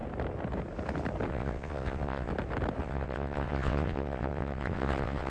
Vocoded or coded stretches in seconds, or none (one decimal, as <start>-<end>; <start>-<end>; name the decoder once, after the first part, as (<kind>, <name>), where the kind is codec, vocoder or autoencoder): 1.3-2.3 (vocoder, WaveNeXt); 2.8-5.3